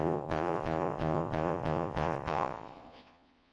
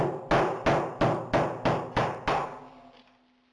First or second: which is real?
second